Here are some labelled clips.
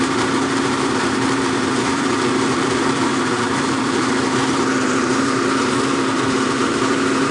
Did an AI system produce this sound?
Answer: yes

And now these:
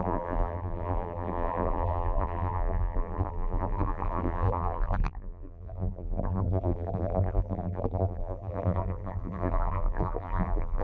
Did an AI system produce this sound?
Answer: yes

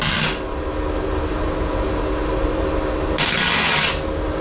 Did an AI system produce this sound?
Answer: no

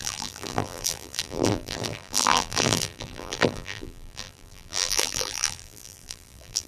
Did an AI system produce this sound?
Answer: yes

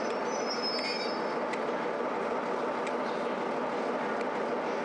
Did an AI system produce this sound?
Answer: no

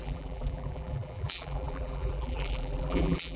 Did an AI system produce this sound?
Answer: yes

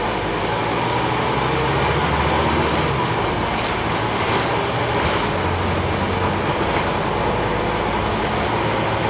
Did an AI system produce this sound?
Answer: no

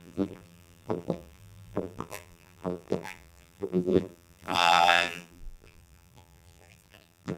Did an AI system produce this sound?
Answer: yes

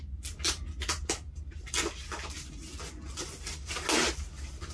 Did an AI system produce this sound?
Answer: no